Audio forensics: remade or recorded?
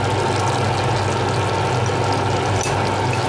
recorded